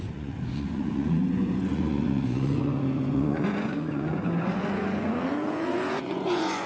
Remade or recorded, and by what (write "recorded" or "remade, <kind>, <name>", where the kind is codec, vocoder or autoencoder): remade, vocoder, Vocos